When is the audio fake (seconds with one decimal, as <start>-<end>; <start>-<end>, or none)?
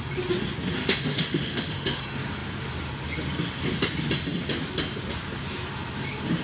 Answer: 0.8-2.0